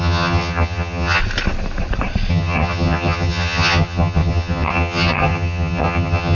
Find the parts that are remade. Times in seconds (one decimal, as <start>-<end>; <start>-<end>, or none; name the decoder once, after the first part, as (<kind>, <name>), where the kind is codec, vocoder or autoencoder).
0.0-1.2 (vocoder, HiFi-GAN); 2.3-6.3

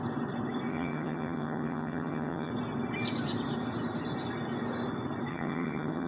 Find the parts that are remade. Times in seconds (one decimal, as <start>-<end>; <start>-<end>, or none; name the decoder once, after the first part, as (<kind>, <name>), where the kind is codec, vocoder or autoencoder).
0.7-2.5 (vocoder, HiFi-GAN); 5.3-6.1